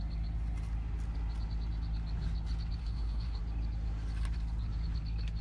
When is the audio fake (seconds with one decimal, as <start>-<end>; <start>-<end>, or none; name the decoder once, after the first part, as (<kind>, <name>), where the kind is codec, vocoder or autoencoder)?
2.8-3.4 (codec, SNAC)